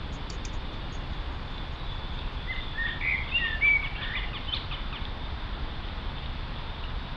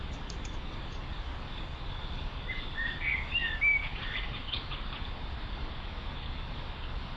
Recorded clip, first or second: first